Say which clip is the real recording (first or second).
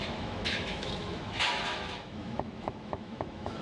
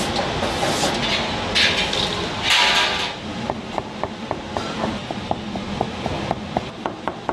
second